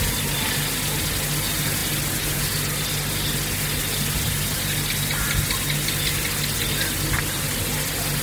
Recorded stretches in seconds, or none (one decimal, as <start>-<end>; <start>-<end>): 0.0-8.2